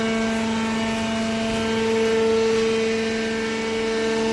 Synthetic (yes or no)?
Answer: no